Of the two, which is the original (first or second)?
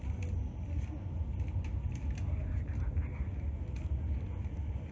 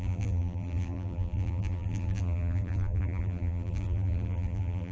first